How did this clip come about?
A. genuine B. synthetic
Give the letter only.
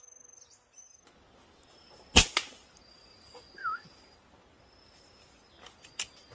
A